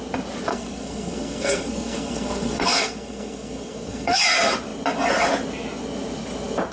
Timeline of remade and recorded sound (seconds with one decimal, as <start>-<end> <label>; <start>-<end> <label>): 0.0-0.5 recorded; 0.5-4.2 remade; 4.2-6.7 recorded